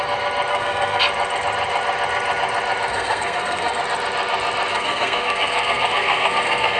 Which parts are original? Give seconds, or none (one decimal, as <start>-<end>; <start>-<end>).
0.0-0.5; 1.0-2.9; 3.8-4.7